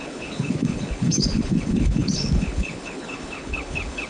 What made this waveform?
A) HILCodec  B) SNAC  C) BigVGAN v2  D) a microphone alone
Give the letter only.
A